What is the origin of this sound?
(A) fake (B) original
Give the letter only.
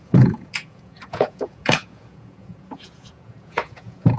A